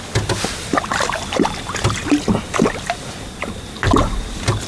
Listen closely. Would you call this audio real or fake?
real